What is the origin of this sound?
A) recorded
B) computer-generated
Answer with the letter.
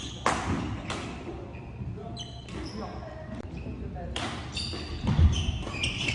A